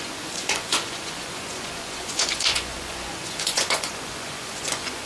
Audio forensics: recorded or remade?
remade